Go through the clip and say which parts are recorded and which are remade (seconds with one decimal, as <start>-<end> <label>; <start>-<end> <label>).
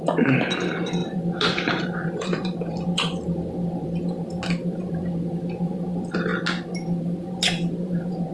0.0-6.3 remade; 6.3-7.0 recorded; 7.0-8.3 remade